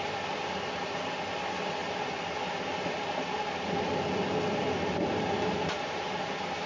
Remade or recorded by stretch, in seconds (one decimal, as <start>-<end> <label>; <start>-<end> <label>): 0.0-6.7 recorded